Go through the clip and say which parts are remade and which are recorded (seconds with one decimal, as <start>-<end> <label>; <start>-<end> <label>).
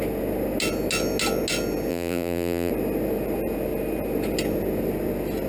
0.0-1.9 recorded; 1.9-2.7 remade; 2.7-5.5 recorded